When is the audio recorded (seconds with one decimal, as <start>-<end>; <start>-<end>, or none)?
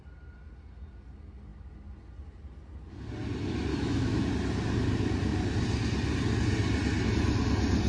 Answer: 0.0-3.7; 4.2-7.9